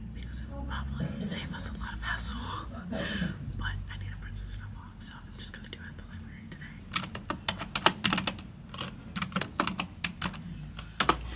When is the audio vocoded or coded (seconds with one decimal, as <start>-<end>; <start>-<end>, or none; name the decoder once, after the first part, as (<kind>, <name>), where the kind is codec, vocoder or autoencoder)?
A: none